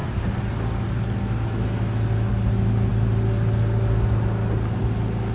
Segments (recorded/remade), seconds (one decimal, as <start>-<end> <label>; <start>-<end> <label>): 0.0-5.3 recorded